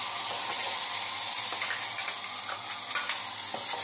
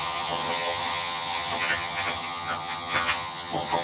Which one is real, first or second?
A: first